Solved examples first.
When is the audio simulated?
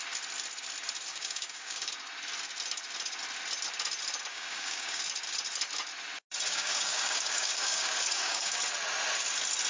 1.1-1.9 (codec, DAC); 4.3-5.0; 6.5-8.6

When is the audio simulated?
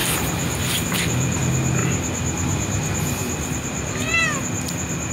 0.0-1.4 (vocoder, BigVGAN v2); 1.8-5.1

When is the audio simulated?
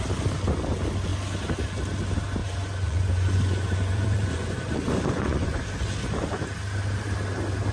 2.4-5.6 (vocoder, Vocos)